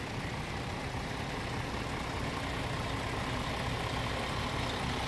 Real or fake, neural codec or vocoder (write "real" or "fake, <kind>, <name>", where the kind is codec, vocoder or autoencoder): real